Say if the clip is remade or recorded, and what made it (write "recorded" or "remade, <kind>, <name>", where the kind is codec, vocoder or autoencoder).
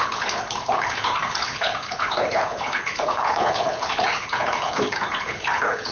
remade, codec, HILCodec